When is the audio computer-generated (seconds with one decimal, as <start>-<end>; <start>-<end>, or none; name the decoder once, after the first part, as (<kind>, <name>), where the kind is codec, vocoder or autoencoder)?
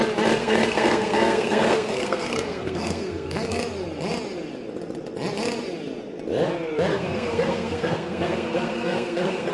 0.4-3.6 (codec, SNAC); 6.9-9.5